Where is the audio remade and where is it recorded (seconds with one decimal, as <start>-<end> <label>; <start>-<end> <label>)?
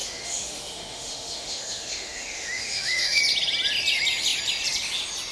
0.0-3.2 remade; 3.2-5.3 recorded